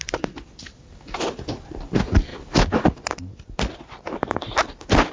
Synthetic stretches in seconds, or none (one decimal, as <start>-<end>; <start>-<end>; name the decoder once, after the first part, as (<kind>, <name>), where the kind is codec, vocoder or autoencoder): none